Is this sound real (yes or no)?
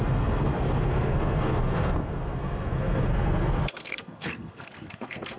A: no